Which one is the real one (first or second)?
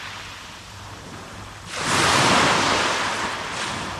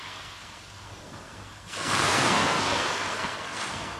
first